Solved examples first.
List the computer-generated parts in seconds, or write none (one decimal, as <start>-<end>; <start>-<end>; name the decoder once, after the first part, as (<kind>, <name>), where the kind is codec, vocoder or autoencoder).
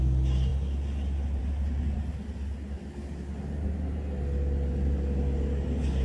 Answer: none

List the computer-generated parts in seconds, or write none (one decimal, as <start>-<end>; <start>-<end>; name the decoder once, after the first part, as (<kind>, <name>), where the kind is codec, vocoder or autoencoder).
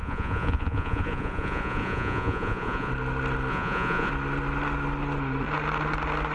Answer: 0.0-2.9 (vocoder, Vocos); 3.5-4.1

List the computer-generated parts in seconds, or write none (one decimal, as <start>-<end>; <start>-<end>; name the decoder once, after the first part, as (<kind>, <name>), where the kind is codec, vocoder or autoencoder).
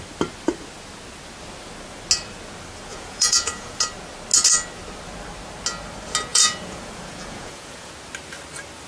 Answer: 2.9-3.8 (vocoder, Vocos); 6.3-7.9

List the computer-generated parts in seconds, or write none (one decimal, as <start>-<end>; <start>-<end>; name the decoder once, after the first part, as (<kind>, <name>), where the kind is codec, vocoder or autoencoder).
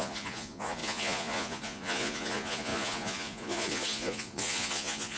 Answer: 0.0-5.2 (vocoder, Vocos)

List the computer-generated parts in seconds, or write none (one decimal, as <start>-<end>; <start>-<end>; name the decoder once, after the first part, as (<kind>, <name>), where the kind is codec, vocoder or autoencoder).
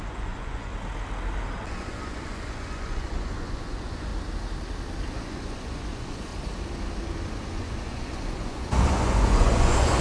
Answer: 0.0-0.7 (vocoder, Vocos); 1.7-4.1; 5.1-6.3; 7.3-10.0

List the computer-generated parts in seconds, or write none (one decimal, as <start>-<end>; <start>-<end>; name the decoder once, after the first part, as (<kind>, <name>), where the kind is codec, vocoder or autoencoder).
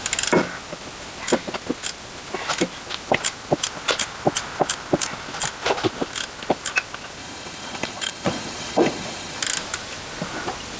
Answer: 7.2-9.4 (vocoder, Vocos)